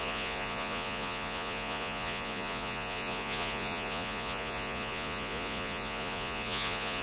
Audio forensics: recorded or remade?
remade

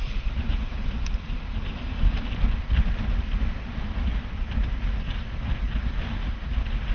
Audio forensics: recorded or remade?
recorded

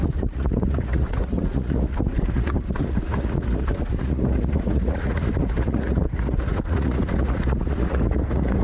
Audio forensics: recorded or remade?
remade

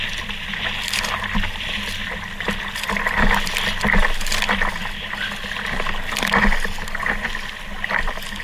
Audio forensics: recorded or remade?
recorded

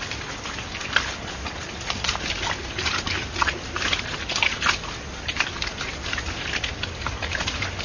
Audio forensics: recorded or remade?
recorded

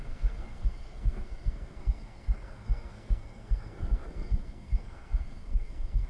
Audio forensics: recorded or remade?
remade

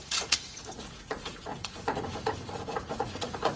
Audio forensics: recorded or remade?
remade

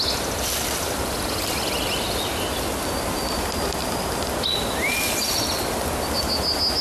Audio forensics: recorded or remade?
recorded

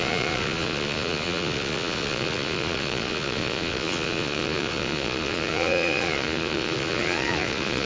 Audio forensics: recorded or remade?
remade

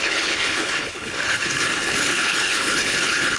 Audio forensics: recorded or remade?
remade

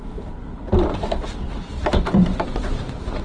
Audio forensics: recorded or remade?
recorded